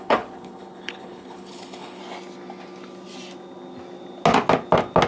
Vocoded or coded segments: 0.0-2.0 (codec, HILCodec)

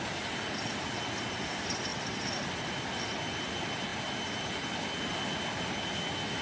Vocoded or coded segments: none

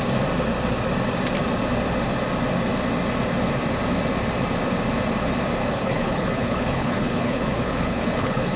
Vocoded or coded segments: 5.6-8.6 (codec, HILCodec)

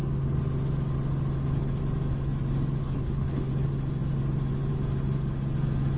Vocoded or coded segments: 2.8-3.5 (codec, HILCodec)